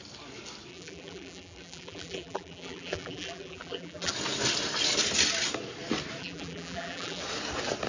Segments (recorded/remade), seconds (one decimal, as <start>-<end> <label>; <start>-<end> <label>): 0.0-0.7 recorded; 0.7-4.1 remade; 4.1-6.2 recorded; 6.2-7.2 remade; 7.2-7.9 recorded